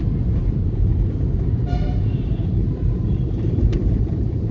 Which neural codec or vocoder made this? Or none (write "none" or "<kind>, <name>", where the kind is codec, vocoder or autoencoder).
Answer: vocoder, BigVGAN v2